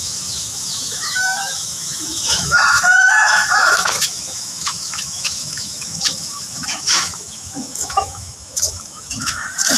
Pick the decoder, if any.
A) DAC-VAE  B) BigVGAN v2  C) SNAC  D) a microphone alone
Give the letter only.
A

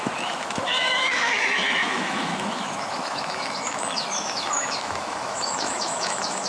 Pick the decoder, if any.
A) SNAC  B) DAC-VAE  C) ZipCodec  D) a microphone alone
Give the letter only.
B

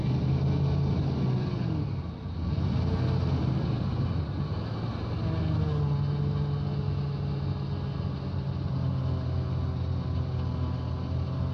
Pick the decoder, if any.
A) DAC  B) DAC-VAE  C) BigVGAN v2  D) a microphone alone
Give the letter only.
D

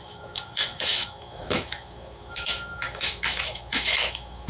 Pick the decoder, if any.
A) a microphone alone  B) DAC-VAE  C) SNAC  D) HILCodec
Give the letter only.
B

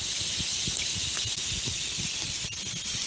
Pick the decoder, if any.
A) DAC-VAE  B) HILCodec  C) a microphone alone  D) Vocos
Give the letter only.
C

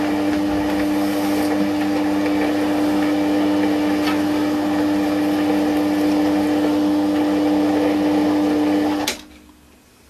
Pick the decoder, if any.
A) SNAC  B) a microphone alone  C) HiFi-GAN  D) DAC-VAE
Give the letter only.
B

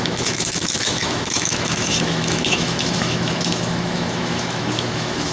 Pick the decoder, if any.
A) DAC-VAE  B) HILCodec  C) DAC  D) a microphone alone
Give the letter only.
A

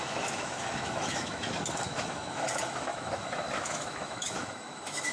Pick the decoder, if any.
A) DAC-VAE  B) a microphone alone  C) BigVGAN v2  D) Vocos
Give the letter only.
A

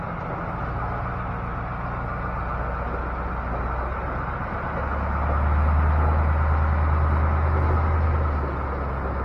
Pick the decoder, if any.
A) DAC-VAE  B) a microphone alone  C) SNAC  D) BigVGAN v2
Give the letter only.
B